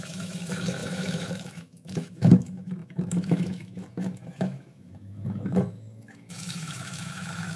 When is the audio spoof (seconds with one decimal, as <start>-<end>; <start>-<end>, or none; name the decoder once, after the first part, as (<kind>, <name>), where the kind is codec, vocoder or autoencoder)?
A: 0.0-7.6 (autoencoder, DAC-VAE)